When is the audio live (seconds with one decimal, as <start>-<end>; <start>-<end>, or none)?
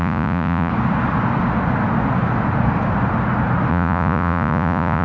0.7-3.7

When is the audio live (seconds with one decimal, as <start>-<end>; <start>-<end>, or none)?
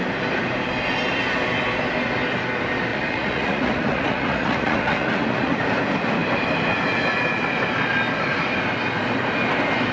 0.0-2.9; 5.6-9.9